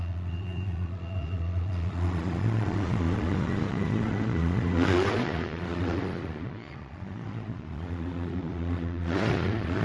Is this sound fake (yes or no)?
yes